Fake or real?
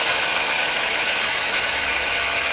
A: fake